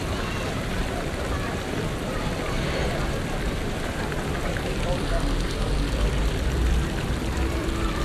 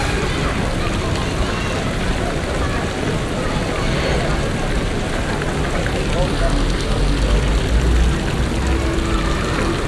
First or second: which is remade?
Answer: first